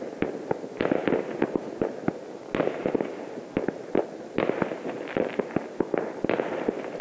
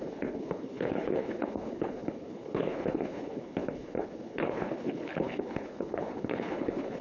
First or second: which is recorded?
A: first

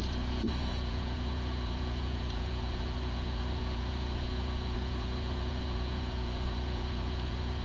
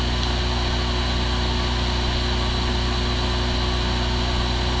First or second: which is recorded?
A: second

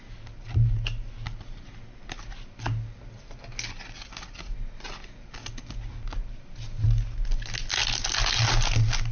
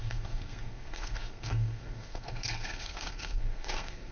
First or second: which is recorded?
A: first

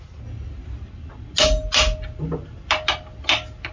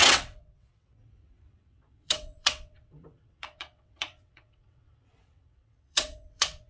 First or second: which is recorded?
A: first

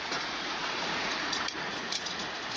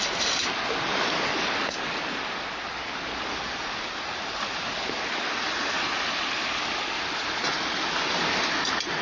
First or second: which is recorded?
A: second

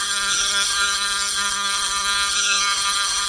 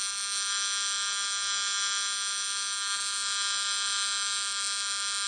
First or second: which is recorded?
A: second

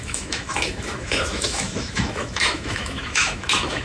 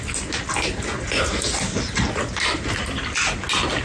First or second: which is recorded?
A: second